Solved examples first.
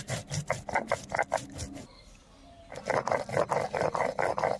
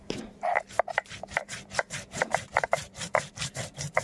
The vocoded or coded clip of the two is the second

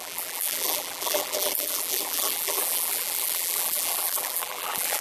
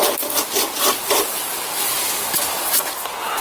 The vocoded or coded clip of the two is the first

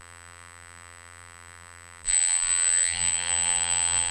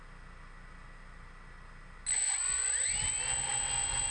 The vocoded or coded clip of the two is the first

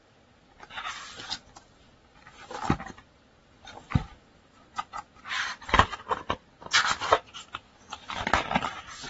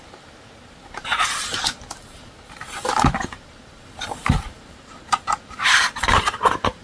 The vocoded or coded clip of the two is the second